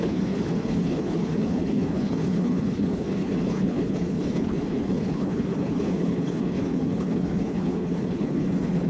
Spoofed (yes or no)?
yes